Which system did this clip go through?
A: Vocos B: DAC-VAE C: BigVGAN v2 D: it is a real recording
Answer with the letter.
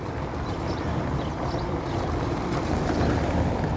C